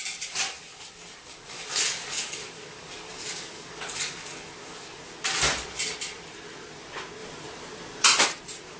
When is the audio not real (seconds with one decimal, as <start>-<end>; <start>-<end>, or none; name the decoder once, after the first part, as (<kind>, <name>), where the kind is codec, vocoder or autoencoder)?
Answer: 0.0-5.0 (codec, DAC)

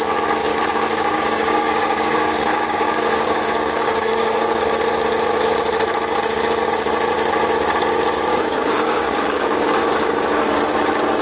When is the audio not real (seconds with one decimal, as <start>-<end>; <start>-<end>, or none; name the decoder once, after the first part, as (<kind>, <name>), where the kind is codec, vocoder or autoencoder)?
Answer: 0.5-4.8 (codec, DAC); 8.3-10.4

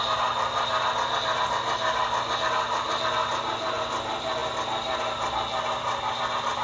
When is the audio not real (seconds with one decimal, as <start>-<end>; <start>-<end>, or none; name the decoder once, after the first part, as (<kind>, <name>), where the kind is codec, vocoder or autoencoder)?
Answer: none

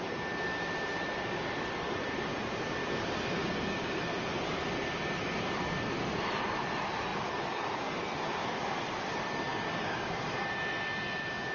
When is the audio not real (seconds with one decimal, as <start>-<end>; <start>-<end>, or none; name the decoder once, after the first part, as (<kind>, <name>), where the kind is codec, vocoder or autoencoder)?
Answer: 3.4-4.0 (codec, DAC); 9.5-10.3

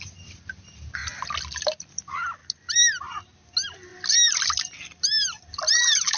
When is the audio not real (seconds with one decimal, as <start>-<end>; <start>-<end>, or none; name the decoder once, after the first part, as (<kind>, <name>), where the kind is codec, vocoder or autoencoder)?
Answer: none

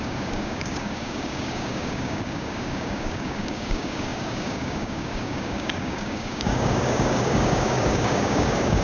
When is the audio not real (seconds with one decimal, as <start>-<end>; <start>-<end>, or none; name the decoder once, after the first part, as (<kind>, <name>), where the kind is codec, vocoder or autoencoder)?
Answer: 0.0-8.8 (codec, DAC)